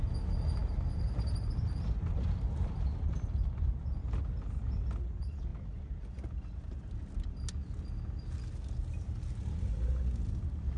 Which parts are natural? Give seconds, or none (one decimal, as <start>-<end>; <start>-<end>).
0.0-10.8